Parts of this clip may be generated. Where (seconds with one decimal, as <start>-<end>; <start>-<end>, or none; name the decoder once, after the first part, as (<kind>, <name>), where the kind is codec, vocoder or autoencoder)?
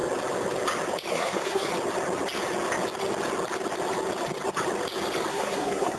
1.1-1.7 (codec, SNAC); 5.3-6.0